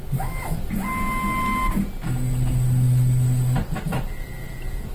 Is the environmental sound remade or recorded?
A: recorded